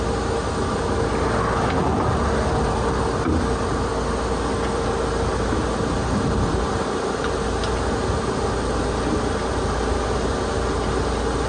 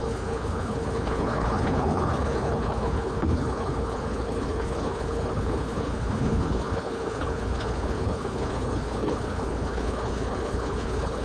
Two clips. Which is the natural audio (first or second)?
first